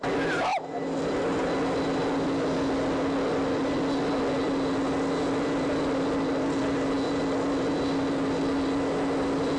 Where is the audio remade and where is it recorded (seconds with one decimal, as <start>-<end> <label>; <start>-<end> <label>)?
0.0-9.6 recorded